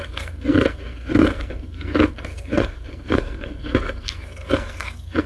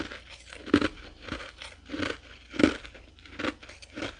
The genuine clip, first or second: second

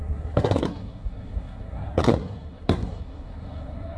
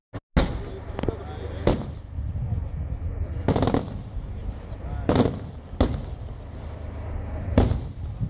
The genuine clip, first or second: second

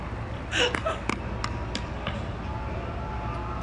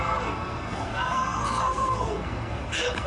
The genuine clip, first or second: first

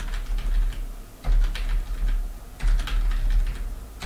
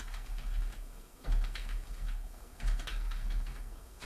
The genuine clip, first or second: first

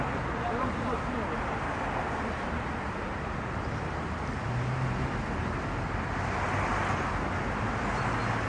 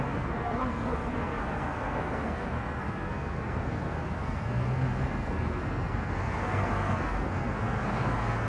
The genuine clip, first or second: first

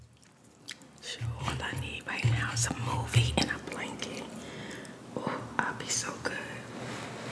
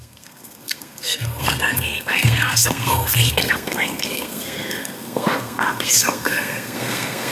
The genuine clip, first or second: first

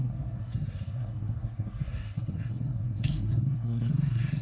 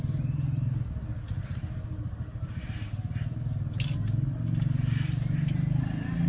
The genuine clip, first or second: second